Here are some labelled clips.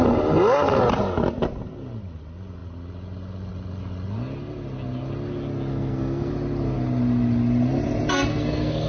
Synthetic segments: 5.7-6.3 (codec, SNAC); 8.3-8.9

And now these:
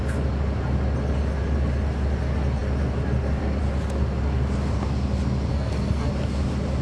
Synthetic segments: 5.5-6.1 (codec, SNAC)

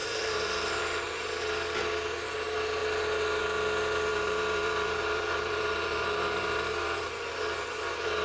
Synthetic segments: 0.0-0.8 (vocoder, BigVGAN v2); 4.1-7.1

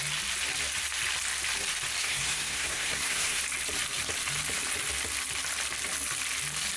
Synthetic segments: 2.0-3.4 (codec, SNAC)

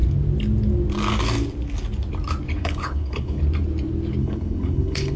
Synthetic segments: 2.6-3.4 (codec, HILCodec); 4.2-5.2

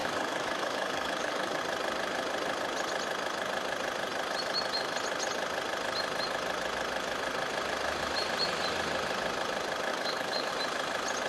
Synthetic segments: 0.0-1.6 (codec, DAC); 9.9-10.5

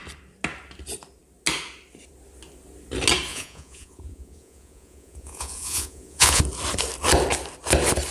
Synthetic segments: 3.3-6.4 (vocoder, Vocos)

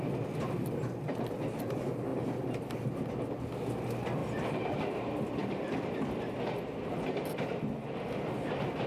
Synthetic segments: none